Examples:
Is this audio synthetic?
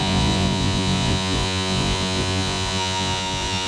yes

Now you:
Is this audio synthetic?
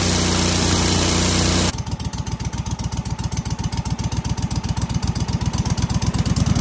no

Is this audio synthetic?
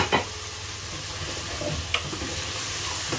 no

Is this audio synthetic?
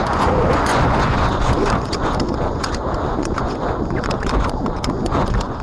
yes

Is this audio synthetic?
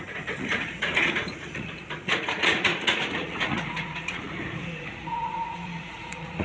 yes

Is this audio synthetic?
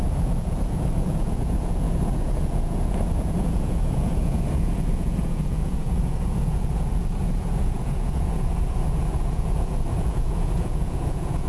yes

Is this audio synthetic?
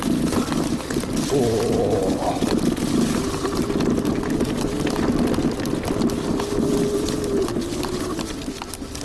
no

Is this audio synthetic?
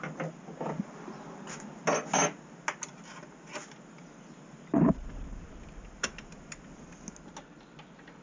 no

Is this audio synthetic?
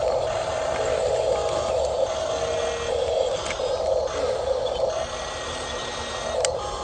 no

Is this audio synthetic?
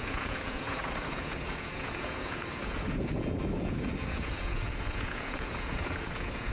yes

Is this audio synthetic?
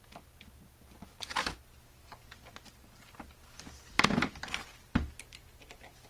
no